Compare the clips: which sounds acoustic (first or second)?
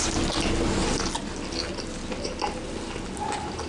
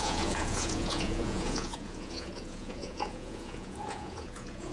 first